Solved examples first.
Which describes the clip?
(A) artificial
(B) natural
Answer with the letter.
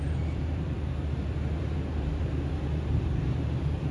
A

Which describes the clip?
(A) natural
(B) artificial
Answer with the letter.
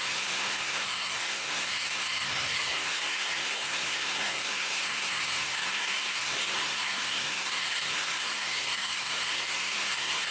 B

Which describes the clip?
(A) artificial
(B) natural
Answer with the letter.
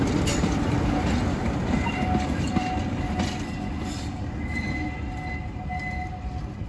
B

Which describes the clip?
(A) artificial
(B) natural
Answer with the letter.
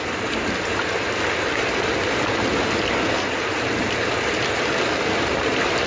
B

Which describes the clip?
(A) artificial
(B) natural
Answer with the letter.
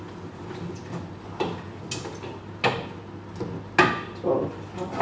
B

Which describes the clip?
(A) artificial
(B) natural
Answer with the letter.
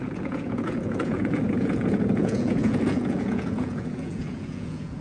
A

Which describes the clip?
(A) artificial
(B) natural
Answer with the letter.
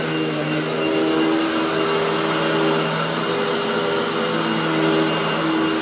B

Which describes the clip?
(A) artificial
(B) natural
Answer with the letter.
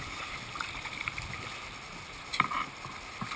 B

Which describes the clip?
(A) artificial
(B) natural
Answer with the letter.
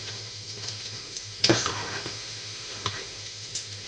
A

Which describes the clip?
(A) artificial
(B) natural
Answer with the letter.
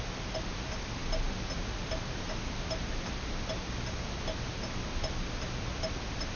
B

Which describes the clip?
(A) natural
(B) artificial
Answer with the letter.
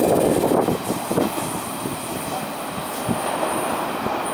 A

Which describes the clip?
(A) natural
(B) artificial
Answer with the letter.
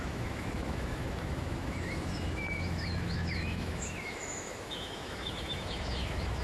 B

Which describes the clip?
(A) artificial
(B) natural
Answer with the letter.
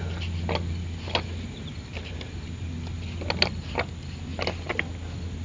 B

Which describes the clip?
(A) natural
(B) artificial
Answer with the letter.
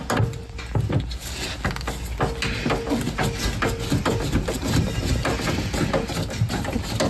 A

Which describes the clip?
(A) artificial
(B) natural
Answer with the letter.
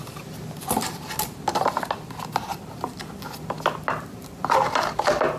B